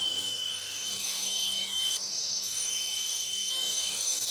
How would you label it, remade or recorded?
remade